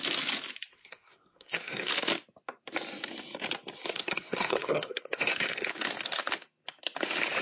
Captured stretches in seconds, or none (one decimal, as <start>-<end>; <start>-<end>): 0.0-0.7; 1.9-3.9; 5.7-7.4